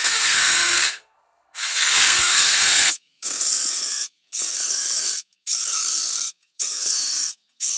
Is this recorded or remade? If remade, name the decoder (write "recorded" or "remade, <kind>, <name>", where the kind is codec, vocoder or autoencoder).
remade, codec, SNAC